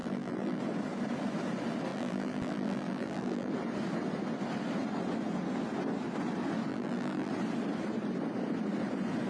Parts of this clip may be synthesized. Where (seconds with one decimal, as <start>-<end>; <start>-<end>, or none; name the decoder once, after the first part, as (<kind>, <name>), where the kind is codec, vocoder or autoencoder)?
0.0-0.6 (vocoder, BigVGAN v2); 1.9-3.5; 6.7-7.3